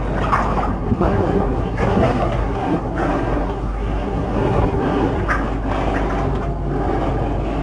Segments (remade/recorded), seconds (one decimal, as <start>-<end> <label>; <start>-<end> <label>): 0.0-0.7 recorded; 0.7-5.3 remade; 5.3-7.6 recorded